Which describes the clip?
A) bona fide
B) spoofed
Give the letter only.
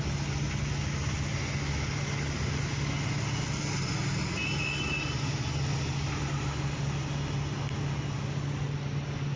A